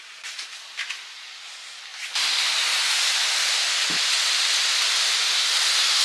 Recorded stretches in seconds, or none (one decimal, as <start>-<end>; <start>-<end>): 0.0-6.0